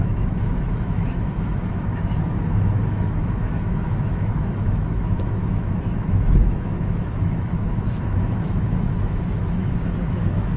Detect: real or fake fake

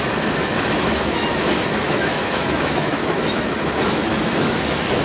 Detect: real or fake fake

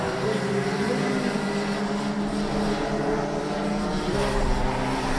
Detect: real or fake real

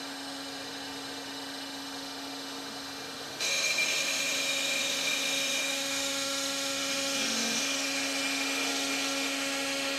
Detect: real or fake fake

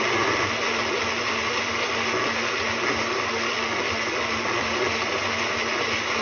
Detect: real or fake real